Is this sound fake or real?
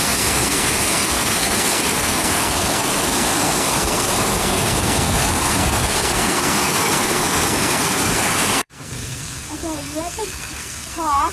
fake